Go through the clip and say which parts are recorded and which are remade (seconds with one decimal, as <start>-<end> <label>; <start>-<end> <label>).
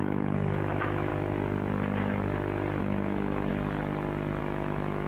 0.0-1.1 remade; 1.1-2.8 recorded; 2.8-3.5 remade; 3.5-4.4 recorded; 4.4-5.1 remade